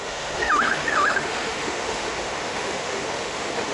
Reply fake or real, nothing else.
fake